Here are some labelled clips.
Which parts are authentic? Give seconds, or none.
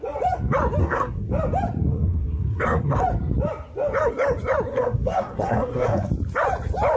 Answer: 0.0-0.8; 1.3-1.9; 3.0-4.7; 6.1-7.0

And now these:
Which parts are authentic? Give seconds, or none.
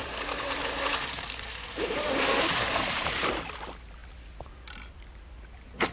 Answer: 3.5-5.9